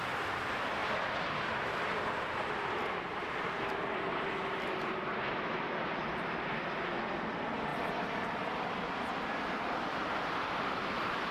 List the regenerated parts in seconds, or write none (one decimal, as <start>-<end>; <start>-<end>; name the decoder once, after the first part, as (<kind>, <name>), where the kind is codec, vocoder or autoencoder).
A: 0.0-11.3 (vocoder, BigVGAN v2)